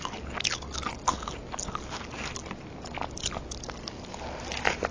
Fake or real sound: real